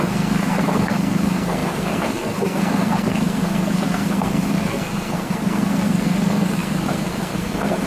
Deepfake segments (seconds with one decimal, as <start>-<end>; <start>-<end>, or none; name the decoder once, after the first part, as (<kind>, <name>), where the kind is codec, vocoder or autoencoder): 0.0-7.9 (codec, SNAC)